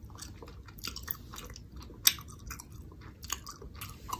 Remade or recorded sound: recorded